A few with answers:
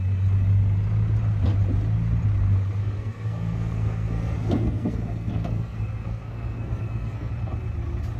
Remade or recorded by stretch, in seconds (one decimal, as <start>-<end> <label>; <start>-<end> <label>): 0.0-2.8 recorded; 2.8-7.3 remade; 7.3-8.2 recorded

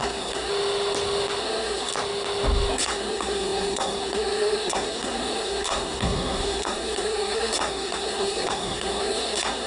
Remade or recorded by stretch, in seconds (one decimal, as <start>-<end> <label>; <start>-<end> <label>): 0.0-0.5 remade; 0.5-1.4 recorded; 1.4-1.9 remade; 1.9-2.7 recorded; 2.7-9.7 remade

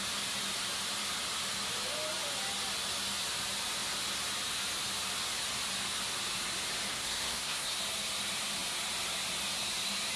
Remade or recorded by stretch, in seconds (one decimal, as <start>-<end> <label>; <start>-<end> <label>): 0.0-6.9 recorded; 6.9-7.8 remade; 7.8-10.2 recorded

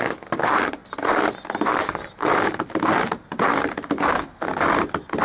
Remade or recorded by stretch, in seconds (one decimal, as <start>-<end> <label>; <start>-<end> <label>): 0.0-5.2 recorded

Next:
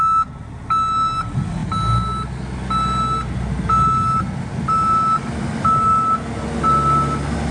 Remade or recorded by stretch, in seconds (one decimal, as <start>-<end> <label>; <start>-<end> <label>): 0.0-7.5 recorded

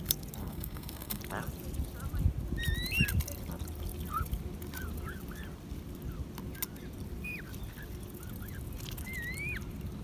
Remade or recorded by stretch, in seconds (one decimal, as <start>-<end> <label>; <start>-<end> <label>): 0.0-0.4 recorded; 0.4-1.2 remade; 1.2-10.0 recorded

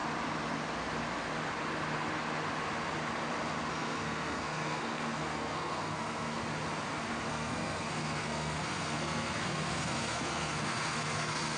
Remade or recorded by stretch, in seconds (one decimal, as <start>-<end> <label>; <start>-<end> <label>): 0.0-3.7 recorded; 3.7-6.4 remade; 6.4-7.3 recorded; 7.3-11.6 remade